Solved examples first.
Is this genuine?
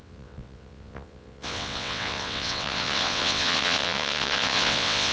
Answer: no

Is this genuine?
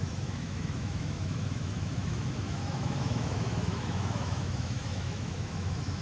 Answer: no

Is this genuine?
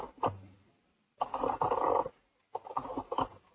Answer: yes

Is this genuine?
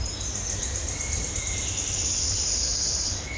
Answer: yes